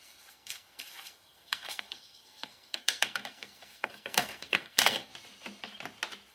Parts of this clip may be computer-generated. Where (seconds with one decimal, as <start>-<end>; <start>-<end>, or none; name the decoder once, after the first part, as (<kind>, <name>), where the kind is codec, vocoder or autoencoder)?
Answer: 0.0-5.1 (codec, SNAC)